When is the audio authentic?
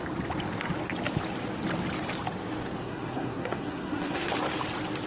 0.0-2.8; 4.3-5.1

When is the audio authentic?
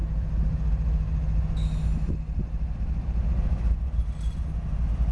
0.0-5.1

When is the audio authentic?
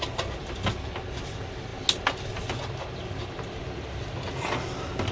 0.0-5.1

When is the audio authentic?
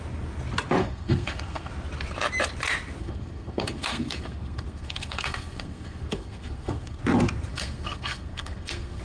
0.0-0.8; 1.7-3.0; 7.0-7.5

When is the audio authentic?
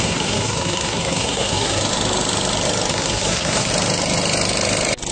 1.8-2.9; 3.7-5.1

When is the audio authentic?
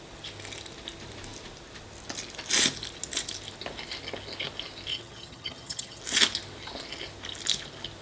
0.0-4.9; 6.0-8.0